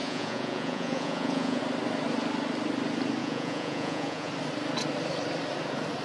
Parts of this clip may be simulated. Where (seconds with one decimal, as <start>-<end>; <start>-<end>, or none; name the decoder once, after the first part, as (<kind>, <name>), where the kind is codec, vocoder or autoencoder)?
0.0-1.6 (vocoder, Vocos); 3.2-4.3

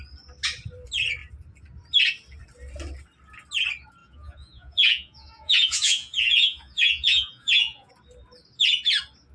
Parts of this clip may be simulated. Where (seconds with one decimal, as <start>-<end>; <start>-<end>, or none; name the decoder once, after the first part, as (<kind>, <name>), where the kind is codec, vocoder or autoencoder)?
4.0-7.9 (vocoder, Vocos)

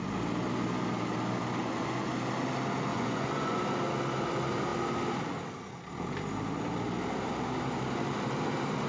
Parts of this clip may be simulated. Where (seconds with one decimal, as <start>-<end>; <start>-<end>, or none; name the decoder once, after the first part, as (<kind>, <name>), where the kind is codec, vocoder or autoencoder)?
1.6-2.1 (vocoder, Vocos); 2.9-3.6